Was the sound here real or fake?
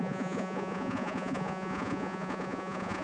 fake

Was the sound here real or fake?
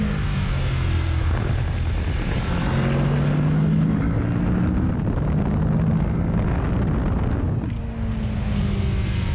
real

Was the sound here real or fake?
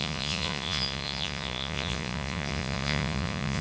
fake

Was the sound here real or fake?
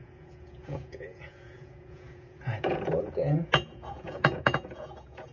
fake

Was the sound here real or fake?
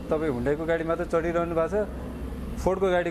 real